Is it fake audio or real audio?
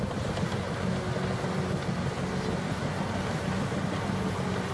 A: real